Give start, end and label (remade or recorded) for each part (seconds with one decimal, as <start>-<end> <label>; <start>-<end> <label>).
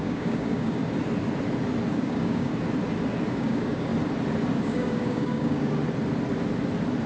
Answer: 0.0-0.8 remade; 0.8-1.9 recorded; 1.9-2.5 remade; 2.5-3.3 recorded; 3.3-3.9 remade; 3.9-4.6 recorded; 4.6-5.8 remade; 5.8-7.1 recorded